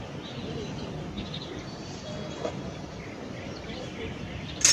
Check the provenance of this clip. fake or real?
real